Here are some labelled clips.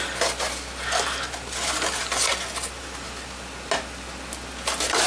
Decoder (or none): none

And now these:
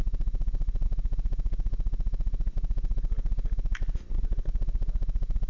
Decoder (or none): none